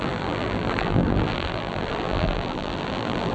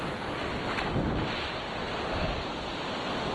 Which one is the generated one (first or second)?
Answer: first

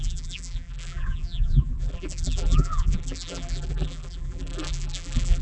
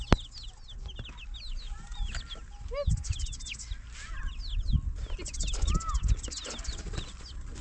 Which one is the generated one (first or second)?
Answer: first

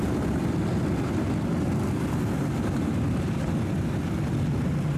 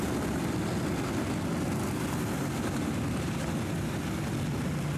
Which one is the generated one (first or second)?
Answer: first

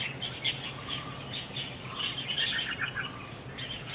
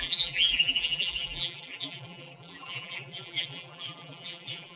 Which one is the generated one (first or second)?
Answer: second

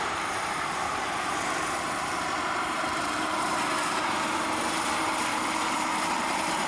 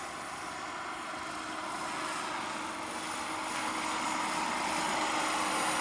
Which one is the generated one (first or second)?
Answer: first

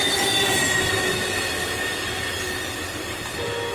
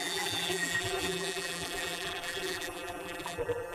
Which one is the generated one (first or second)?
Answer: second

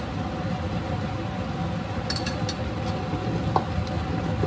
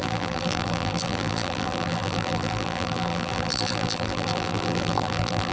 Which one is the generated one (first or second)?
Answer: second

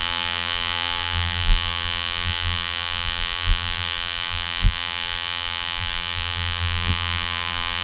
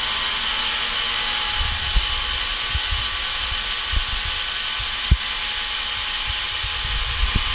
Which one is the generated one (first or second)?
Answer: first